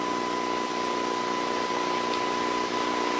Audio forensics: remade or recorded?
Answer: recorded